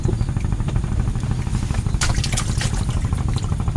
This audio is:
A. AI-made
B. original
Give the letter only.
A